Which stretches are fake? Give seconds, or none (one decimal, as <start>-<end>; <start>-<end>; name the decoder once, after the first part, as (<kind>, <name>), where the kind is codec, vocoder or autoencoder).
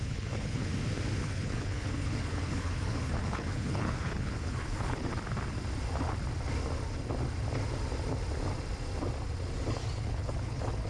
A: 0.0-0.7 (codec, HILCodec); 1.2-5.1; 10.0-10.9